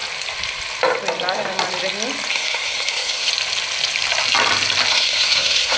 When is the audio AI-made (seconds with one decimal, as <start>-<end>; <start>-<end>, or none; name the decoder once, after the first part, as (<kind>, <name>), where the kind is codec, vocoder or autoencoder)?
2.3-3.3 (codec, SNAC); 4.9-5.8